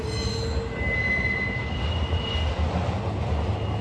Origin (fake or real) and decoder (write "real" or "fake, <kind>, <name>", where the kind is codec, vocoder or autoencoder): real